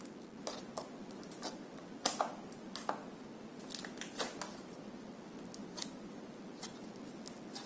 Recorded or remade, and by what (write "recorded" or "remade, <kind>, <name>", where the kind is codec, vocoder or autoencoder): recorded